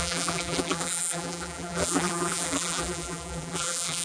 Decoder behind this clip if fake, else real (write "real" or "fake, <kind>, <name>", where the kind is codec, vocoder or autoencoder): fake, vocoder, BigVGAN v2